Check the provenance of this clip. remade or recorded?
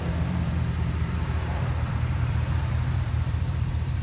remade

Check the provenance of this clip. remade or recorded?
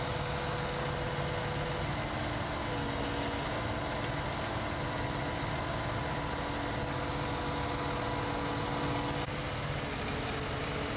recorded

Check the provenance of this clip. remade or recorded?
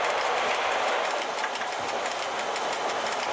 recorded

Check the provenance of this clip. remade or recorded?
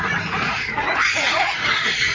remade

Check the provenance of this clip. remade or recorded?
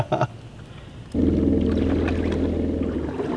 recorded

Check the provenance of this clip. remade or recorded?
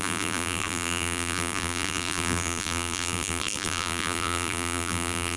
remade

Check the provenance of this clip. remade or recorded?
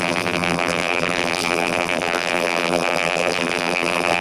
remade